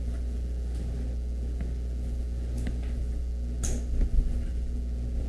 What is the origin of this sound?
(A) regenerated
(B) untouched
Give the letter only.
B